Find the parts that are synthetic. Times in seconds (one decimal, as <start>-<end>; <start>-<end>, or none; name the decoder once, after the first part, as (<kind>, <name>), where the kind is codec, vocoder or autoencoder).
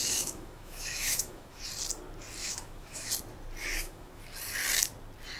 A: 0.0-1.6 (autoencoder, DAC-VAE); 2.4-3.1; 3.6-4.2